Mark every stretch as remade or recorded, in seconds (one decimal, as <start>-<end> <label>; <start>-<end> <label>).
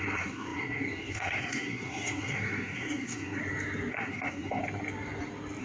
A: 0.0-3.4 remade; 3.4-3.9 recorded; 3.9-4.6 remade; 4.6-5.6 recorded